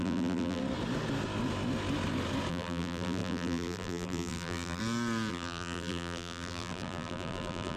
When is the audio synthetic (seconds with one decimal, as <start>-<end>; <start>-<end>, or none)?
0.0-0.6; 2.5-4.8; 5.3-7.8